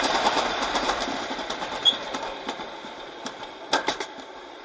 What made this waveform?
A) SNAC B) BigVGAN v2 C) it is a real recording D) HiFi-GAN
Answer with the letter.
B